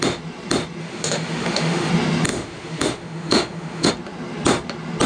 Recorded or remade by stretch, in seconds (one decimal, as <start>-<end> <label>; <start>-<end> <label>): 0.0-0.8 recorded; 0.8-1.9 remade; 1.9-2.3 recorded; 2.3-3.9 remade; 3.9-5.1 recorded